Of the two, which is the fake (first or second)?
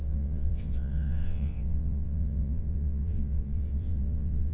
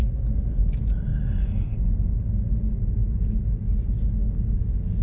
first